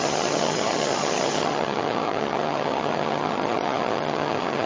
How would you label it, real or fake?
fake